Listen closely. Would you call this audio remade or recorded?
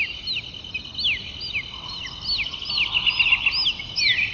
recorded